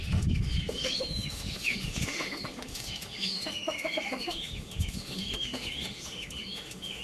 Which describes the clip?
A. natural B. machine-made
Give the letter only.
B